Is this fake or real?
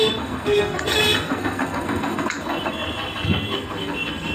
fake